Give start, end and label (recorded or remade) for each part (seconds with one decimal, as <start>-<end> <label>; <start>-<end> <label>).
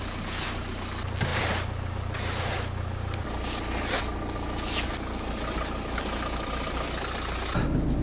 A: 0.0-8.0 recorded